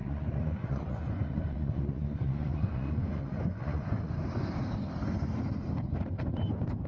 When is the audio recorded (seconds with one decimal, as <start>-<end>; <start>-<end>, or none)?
4.1-6.9